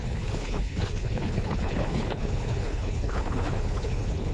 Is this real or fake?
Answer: fake